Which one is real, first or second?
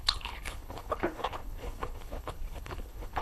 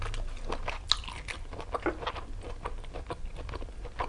second